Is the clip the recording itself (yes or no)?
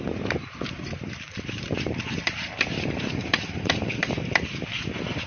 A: no